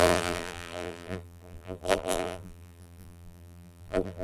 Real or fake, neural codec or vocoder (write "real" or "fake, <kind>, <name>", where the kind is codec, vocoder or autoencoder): fake, vocoder, BigVGAN v2